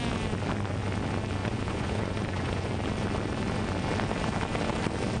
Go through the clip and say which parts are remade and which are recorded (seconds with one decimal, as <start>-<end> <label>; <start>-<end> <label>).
0.0-1.4 recorded; 1.4-2.7 remade; 2.7-5.2 recorded